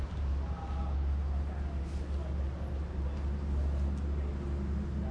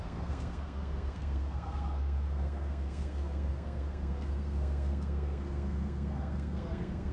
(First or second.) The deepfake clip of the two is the second